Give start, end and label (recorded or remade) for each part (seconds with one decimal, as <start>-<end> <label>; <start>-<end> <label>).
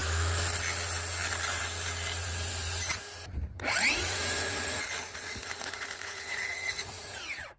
0.0-2.2 recorded; 2.2-3.0 remade; 3.0-3.4 recorded; 3.4-7.6 remade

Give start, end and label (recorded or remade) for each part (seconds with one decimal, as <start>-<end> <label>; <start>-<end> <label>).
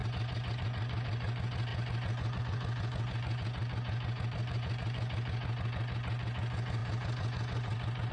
0.0-8.1 remade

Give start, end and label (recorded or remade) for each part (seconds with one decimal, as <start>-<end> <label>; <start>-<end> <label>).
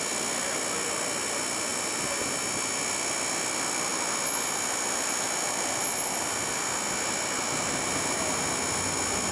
0.0-9.3 recorded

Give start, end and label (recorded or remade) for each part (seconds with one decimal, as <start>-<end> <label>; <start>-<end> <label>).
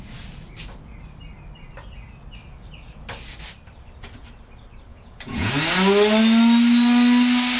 0.0-4.9 recorded; 4.9-5.5 remade; 5.5-7.6 recorded